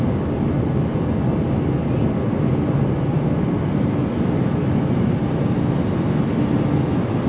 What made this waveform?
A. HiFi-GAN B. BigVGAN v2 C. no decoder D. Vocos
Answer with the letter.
C